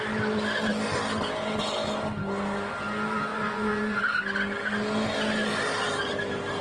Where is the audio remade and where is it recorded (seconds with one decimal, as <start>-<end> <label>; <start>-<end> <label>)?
0.0-3.3 recorded; 3.3-4.0 remade; 4.0-6.6 recorded